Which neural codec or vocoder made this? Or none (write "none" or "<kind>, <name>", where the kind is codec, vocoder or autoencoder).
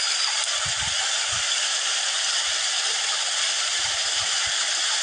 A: none